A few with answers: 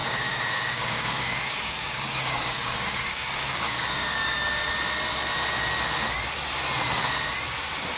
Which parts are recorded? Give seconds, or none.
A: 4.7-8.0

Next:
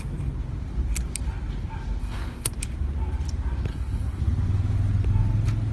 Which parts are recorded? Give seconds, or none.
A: 0.0-2.0; 2.5-3.7; 4.2-5.7

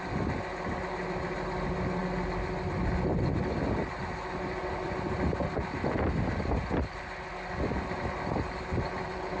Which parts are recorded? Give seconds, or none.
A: 0.0-9.4

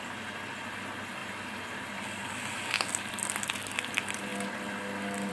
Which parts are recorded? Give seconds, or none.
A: 0.0-5.3

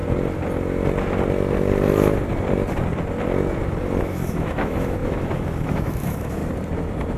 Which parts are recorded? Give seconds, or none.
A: 0.0-4.0; 6.4-7.2

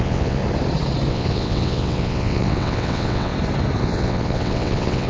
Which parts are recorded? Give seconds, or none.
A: 0.4-1.1; 3.3-3.8

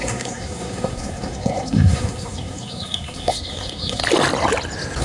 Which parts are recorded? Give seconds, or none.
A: 4.0-5.0